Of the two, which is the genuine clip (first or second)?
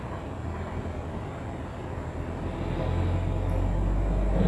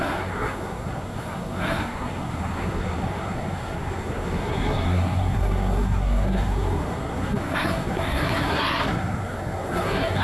first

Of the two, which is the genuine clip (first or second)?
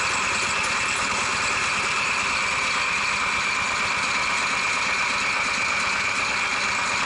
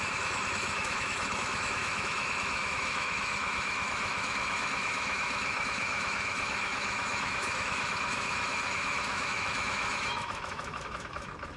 first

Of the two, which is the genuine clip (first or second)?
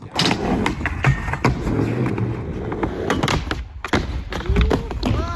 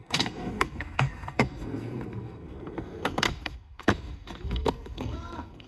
first